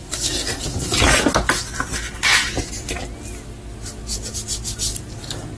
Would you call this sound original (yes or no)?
yes